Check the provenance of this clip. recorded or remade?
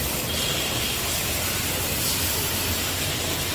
recorded